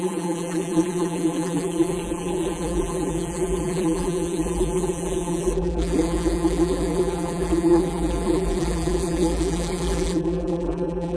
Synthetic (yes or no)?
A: yes